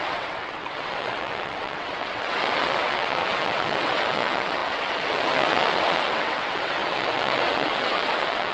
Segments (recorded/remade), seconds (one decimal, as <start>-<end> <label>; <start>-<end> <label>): 0.0-8.5 remade